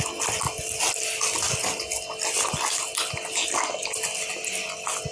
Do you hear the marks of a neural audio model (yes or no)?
no